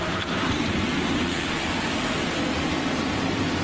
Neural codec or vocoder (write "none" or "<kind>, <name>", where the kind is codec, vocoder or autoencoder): vocoder, BigVGAN v2